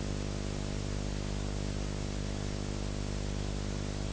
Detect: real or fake real